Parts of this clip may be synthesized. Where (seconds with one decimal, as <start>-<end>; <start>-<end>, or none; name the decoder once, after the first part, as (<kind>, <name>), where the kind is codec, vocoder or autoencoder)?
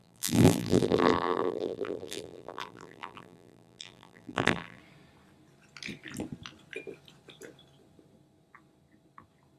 0.0-4.8 (vocoder, BigVGAN v2)